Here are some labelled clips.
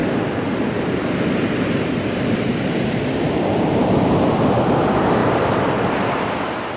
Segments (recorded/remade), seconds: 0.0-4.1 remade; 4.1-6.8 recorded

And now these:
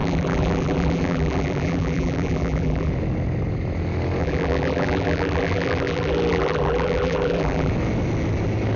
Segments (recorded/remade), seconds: 0.0-2.9 remade; 2.9-4.2 recorded; 4.2-7.7 remade; 7.7-8.8 recorded

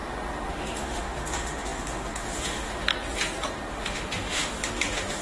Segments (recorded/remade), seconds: 0.0-0.5 recorded; 0.5-2.9 remade; 2.9-3.7 recorded; 3.7-5.2 remade

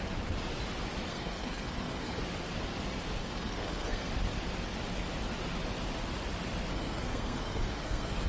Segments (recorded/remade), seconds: 0.0-1.1 recorded; 1.1-2.2 remade; 2.2-3.2 recorded; 3.2-4.1 remade; 4.1-6.7 recorded; 6.7-8.3 remade